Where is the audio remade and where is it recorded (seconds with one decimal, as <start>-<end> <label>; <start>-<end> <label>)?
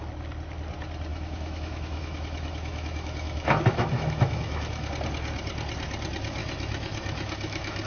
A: 0.0-1.1 recorded; 1.1-4.9 remade; 4.9-6.4 recorded; 6.4-7.9 remade